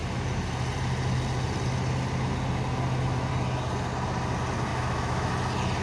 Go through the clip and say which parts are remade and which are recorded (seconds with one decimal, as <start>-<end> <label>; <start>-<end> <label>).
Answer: 0.0-4.7 recorded; 4.7-5.3 remade; 5.3-5.8 recorded